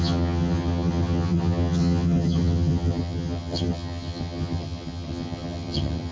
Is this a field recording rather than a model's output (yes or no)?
no